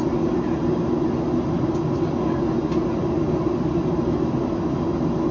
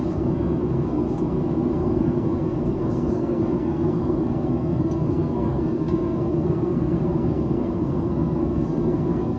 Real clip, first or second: first